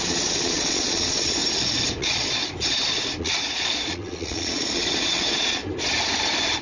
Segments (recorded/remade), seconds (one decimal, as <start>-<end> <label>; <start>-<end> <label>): 0.0-1.4 remade; 1.4-2.0 recorded; 2.0-2.4 remade; 2.4-3.2 recorded; 3.2-5.6 remade; 5.6-6.6 recorded